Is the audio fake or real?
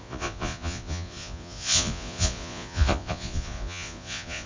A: fake